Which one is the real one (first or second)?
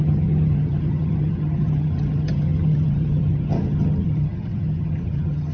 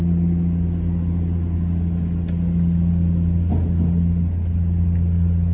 second